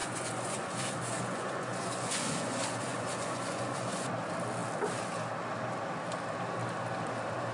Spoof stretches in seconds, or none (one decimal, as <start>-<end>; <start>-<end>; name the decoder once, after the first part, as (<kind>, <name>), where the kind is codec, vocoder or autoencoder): 0.0-4.1 (vocoder, Vocos)